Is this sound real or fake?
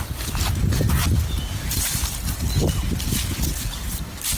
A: real